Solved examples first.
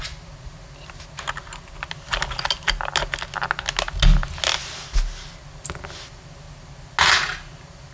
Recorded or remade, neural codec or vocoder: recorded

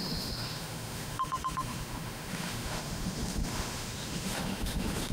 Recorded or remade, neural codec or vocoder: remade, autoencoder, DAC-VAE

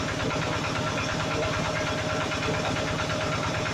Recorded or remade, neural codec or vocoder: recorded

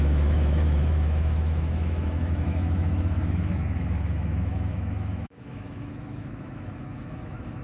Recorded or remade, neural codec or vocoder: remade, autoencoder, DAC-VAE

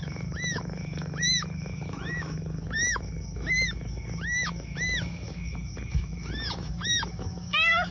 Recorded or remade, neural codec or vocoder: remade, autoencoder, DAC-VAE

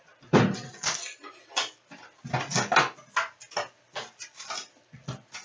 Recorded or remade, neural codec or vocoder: recorded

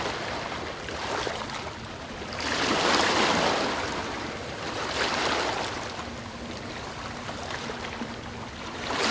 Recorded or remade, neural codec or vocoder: recorded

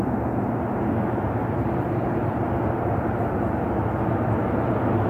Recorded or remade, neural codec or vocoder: recorded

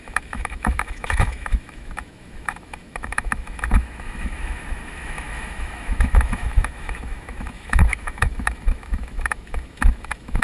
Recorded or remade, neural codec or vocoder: remade, autoencoder, DAC-VAE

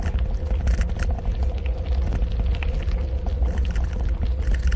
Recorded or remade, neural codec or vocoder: recorded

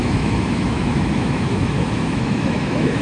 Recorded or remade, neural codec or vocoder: remade, autoencoder, DAC-VAE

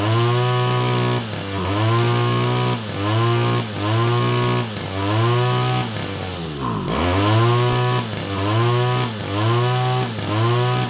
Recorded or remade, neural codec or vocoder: recorded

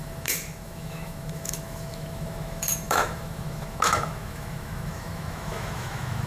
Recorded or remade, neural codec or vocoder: remade, autoencoder, DAC-VAE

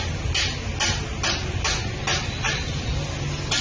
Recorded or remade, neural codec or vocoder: recorded